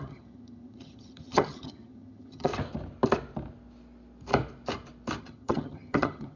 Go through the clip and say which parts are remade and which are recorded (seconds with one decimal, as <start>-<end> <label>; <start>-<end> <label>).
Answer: 0.0-2.5 remade; 2.5-5.2 recorded; 5.2-6.4 remade